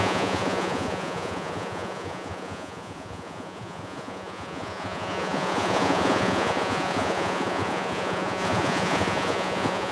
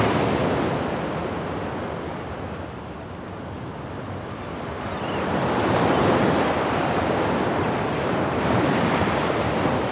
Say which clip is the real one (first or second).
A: second